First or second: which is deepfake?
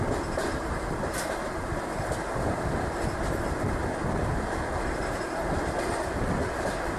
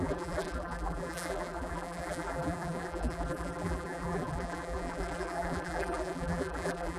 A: second